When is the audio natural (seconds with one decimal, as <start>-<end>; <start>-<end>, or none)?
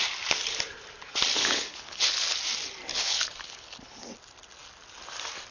0.0-1.3; 2.4-2.9; 4.1-5.5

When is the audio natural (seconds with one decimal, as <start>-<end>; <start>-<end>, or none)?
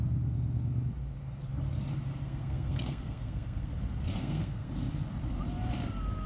0.0-2.2; 3.7-4.2; 4.7-6.3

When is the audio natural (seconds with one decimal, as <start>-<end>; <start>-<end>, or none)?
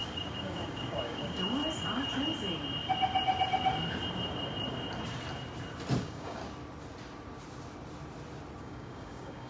1.6-6.0; 6.4-8.6